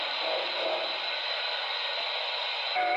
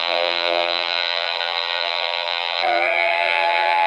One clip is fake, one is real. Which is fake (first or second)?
second